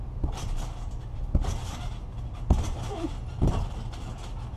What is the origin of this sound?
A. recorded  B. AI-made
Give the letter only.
A